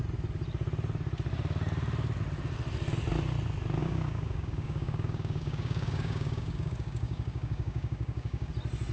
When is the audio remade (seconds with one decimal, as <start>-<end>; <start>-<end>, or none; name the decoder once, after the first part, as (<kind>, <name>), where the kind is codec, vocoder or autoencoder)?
3.8-8.5 (codec, DAC)